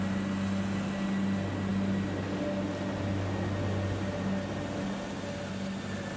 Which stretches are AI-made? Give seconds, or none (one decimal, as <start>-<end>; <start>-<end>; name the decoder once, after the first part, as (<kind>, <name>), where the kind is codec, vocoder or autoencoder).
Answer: none